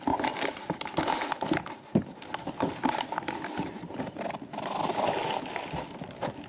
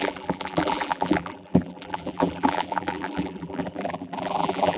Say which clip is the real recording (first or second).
first